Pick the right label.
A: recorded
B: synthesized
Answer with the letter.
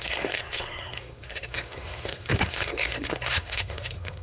B